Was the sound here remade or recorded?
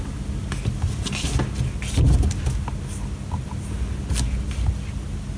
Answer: recorded